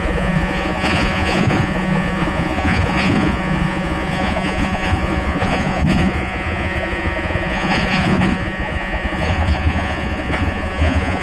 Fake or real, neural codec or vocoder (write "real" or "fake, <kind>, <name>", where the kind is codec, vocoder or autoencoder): fake, vocoder, Vocos